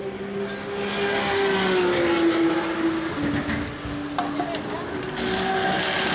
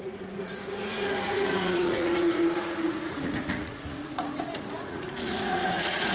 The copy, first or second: second